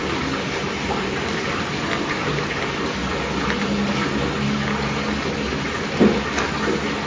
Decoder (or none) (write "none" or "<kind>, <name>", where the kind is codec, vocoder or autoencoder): none